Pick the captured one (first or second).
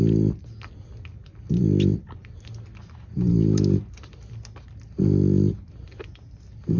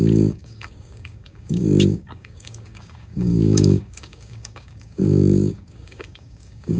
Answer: first